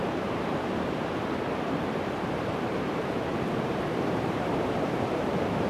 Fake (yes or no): yes